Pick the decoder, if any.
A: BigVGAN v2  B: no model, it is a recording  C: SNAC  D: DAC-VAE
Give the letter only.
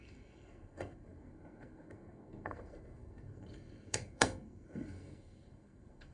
C